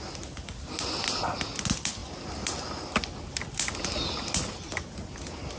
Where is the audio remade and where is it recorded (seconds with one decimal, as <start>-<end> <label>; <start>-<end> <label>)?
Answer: 0.0-5.6 recorded